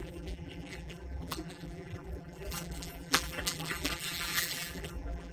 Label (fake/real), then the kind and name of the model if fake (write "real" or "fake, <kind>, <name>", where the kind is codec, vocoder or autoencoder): fake, vocoder, BigVGAN v2